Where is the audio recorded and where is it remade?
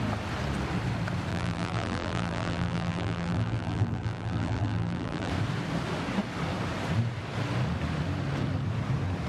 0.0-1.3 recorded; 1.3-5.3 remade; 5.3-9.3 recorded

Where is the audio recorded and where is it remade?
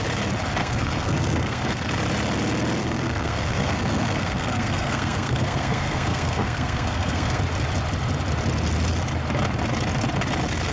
0.0-0.6 recorded; 0.6-1.9 remade; 1.9-2.8 recorded; 2.8-7.4 remade; 7.4-10.7 recorded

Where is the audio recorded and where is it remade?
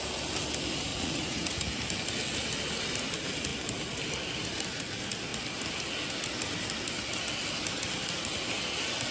0.0-0.9 recorded; 0.9-1.6 remade; 1.6-9.1 recorded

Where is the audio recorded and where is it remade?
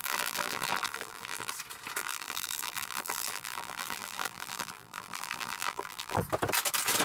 0.0-1.5 remade; 1.5-2.0 recorded; 2.0-6.2 remade; 6.2-7.0 recorded